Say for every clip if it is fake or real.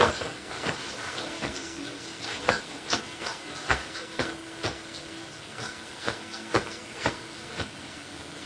fake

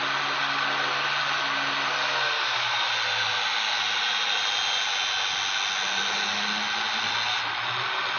real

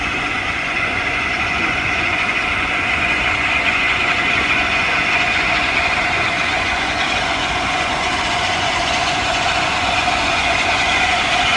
fake